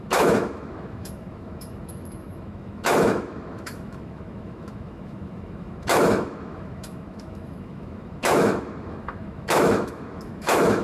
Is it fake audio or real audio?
fake